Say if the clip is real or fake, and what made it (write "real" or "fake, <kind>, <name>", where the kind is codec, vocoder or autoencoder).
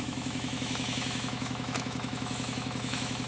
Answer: fake, autoencoder, DAC-VAE